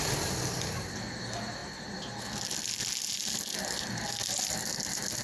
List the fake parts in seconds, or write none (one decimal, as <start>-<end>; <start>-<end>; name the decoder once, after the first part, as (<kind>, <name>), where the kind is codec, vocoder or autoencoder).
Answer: none